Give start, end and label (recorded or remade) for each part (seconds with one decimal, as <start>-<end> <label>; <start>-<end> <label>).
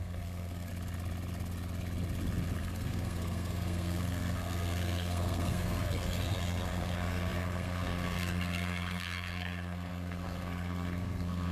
0.0-0.7 remade; 0.7-2.6 recorded; 2.6-11.5 remade